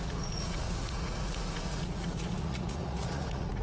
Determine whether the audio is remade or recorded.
remade